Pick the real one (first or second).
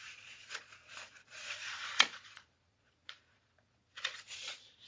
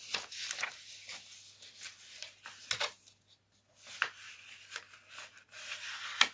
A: second